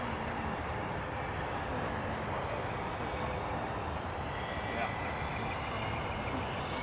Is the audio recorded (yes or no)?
yes